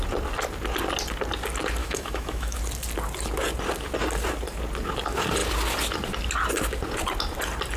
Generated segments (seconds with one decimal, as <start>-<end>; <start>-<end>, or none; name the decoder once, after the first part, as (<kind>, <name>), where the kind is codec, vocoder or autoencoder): 1.8-2.6 (autoencoder, DAC-VAE)